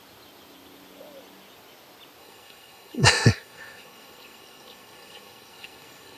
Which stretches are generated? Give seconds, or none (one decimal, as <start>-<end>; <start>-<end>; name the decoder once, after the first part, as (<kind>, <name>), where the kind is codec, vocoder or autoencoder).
2.2-6.2 (codec, SNAC)